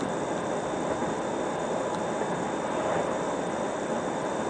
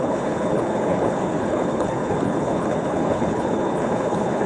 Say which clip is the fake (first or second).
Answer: second